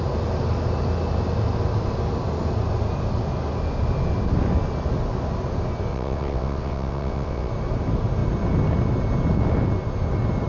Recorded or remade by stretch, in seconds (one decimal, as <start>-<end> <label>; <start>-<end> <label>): 0.0-5.9 recorded; 5.9-7.5 remade; 7.5-10.5 recorded